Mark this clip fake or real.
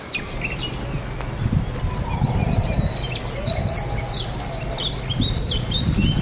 real